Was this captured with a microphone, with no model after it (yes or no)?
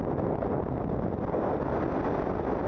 yes